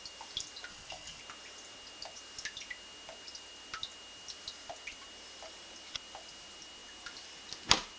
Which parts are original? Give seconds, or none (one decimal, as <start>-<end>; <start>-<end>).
0.0-0.7; 1.2-8.0